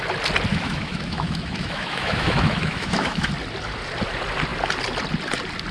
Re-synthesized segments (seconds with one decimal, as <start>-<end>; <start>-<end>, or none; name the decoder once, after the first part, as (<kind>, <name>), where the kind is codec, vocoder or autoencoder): 0.5-3.3 (autoencoder, DAC-VAE)